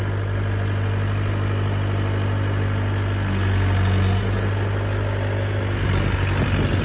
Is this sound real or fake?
real